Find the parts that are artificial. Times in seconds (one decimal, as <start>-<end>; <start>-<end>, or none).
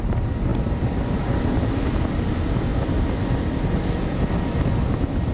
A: none